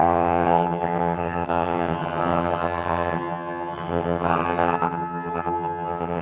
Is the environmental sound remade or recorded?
remade